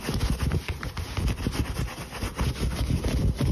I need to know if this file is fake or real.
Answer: real